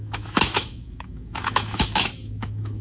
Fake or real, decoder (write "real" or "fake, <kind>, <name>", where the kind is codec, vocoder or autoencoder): fake, autoencoder, DAC-VAE